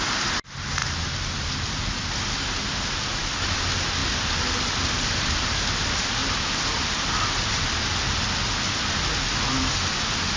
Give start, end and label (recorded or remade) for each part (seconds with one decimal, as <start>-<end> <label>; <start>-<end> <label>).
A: 0.0-0.8 recorded; 0.8-1.5 remade; 1.5-3.1 recorded; 3.1-3.6 remade; 3.6-4.0 recorded; 4.0-5.7 remade; 5.7-6.2 recorded; 6.2-8.2 remade; 8.2-10.4 recorded

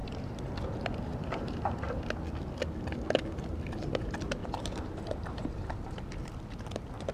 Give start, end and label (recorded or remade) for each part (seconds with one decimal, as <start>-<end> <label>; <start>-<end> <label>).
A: 0.0-1.1 recorded; 1.1-2.1 remade; 2.1-4.4 recorded; 4.4-6.0 remade; 6.0-7.1 recorded